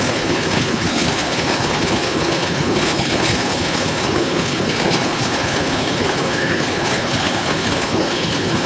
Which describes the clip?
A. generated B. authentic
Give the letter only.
A